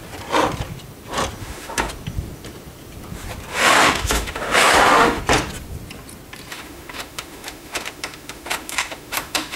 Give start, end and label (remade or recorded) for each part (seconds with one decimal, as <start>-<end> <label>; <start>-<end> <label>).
0.0-1.4 recorded; 1.4-1.9 remade; 1.9-3.5 recorded; 3.5-5.2 remade; 5.2-6.5 recorded; 6.5-9.6 remade